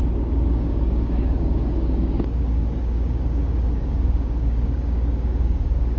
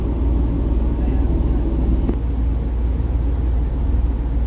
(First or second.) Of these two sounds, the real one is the second